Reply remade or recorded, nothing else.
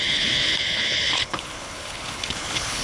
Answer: remade